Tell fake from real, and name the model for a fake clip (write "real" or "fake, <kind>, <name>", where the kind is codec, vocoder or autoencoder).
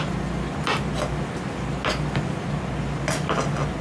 real